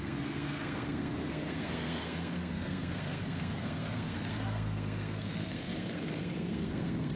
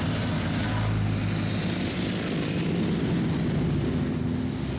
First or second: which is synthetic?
first